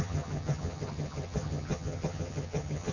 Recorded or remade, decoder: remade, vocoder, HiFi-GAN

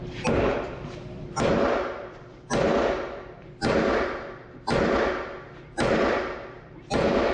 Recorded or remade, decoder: remade, vocoder, BigVGAN v2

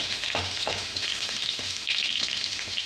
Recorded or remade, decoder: remade, autoencoder, DAC-VAE